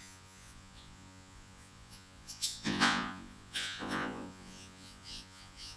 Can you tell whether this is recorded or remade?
remade